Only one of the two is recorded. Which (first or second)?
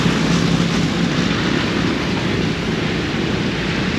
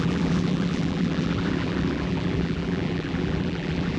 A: first